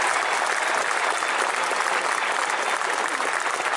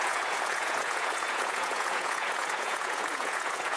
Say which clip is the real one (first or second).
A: first